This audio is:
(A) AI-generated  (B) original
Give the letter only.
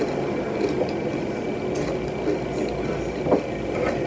B